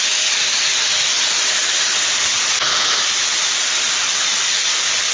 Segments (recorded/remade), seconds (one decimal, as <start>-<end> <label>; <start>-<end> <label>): 0.0-5.1 recorded